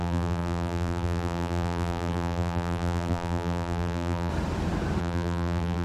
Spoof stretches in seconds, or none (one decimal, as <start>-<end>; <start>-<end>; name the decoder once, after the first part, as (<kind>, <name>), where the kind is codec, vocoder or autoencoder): 0.0-4.3 (vocoder, BigVGAN v2); 5.0-5.8